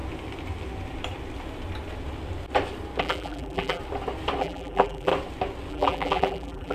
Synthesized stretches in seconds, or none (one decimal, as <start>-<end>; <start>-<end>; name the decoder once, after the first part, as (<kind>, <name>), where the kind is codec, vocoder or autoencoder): 3.0-3.8 (vocoder, BigVGAN v2); 4.4-5.1; 5.7-6.7